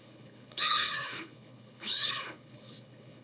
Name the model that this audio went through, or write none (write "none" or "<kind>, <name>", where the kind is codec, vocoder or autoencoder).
codec, HILCodec